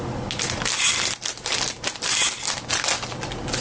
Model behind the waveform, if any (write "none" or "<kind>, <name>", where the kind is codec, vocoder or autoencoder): none